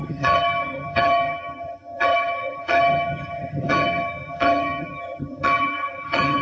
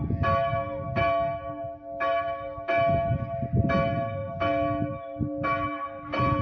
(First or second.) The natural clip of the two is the second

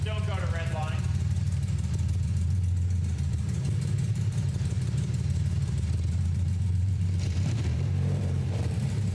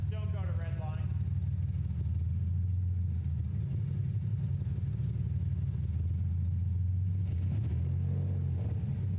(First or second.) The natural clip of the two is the second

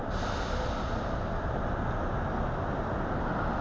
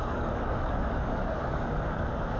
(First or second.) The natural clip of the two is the first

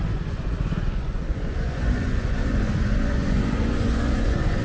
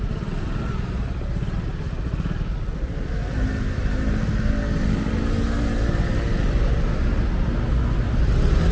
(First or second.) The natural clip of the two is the second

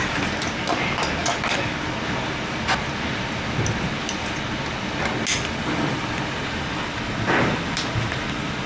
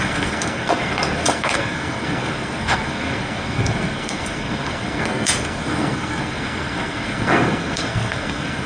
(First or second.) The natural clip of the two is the first